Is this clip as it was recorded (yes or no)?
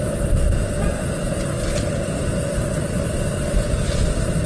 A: yes